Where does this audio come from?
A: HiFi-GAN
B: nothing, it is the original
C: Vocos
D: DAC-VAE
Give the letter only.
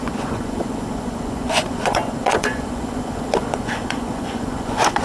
C